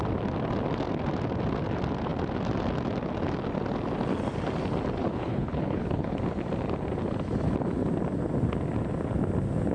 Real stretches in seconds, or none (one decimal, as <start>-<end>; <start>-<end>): 0.0-5.0; 6.2-9.7